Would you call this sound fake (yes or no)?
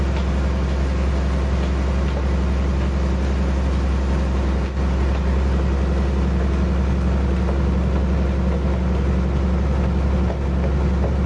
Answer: no